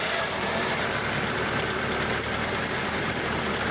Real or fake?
real